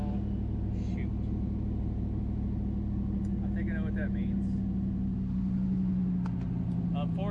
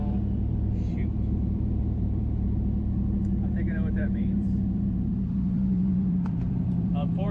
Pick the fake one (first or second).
second